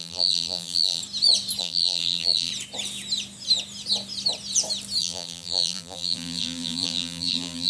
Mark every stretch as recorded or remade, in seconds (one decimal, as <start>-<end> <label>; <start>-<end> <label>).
0.0-1.0 remade; 1.0-1.6 recorded; 1.6-2.5 remade; 2.5-5.0 recorded; 5.0-7.7 remade